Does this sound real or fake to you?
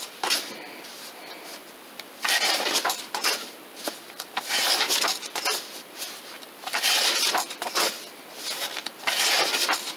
fake